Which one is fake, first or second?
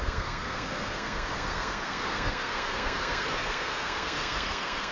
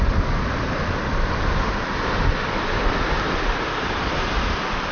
first